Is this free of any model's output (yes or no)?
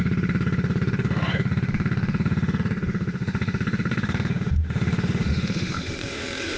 no